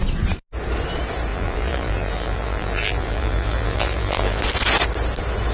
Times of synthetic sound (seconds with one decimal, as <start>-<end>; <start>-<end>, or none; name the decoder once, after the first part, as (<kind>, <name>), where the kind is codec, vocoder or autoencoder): 1.3-4.4 (vocoder, BigVGAN v2)